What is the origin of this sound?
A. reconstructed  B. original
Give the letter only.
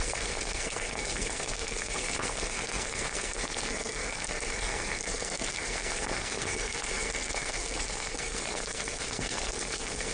A